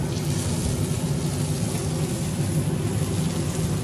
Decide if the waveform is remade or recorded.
recorded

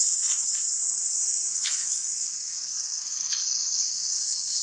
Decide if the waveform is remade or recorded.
remade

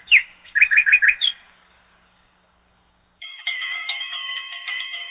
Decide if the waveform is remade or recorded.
remade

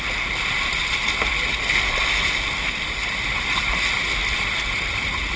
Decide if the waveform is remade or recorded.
recorded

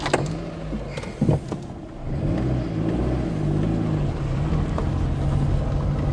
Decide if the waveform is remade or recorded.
recorded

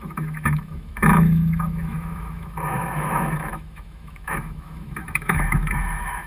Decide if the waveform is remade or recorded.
remade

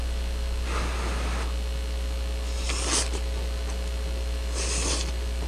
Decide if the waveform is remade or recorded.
recorded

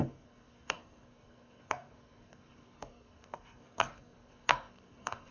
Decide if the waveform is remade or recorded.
remade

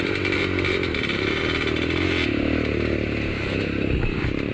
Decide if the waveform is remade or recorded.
recorded